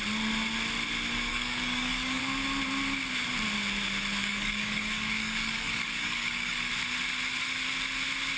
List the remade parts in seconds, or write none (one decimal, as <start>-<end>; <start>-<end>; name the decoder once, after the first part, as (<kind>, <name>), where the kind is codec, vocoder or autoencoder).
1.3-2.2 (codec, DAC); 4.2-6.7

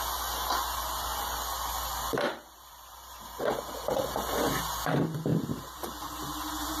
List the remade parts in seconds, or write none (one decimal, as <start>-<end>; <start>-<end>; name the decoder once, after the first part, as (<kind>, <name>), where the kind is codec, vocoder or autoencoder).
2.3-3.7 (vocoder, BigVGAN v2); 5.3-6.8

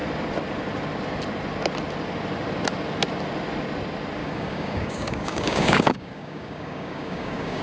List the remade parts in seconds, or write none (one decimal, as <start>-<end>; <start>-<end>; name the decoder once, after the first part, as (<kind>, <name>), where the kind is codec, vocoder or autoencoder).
4.2-7.6 (codec, DAC)